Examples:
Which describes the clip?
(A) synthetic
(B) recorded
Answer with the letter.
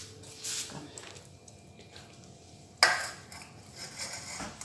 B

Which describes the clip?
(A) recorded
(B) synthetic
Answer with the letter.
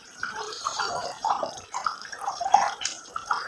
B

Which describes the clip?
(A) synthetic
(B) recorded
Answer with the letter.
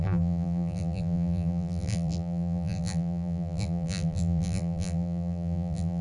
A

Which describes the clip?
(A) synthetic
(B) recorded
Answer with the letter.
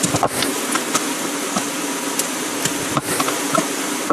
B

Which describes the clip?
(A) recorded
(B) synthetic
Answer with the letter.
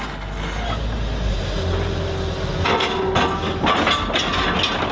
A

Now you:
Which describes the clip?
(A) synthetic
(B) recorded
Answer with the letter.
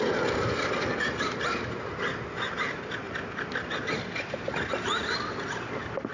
B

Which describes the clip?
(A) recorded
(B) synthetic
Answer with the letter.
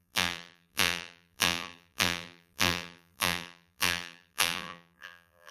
B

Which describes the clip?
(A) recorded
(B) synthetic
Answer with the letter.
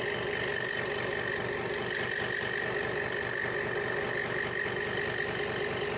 A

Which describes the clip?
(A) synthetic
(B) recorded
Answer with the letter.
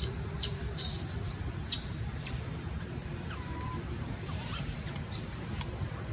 A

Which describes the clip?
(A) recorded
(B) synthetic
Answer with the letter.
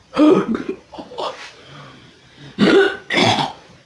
B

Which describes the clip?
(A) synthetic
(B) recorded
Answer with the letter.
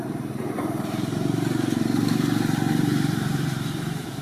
A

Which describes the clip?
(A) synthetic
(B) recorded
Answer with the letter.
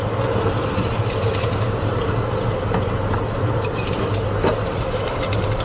B